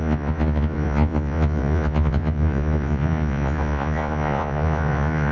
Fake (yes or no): yes